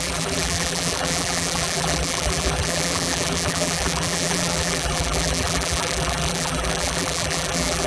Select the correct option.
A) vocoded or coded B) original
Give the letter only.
A